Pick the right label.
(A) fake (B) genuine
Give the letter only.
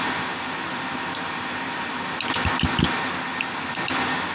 B